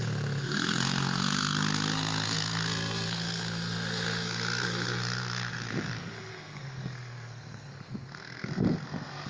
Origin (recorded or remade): remade